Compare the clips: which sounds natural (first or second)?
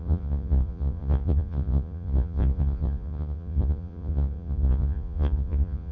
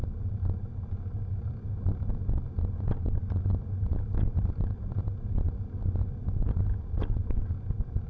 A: second